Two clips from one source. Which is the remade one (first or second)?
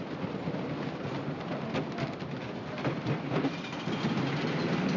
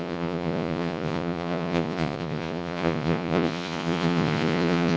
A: second